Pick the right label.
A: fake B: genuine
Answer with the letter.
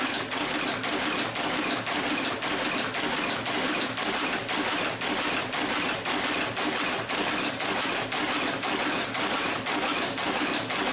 B